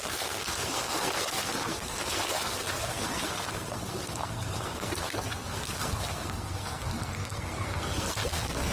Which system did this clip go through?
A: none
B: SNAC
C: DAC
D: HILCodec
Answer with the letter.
B